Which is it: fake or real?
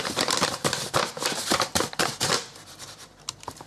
fake